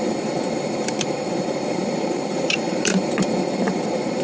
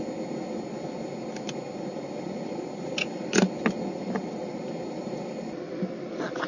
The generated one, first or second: first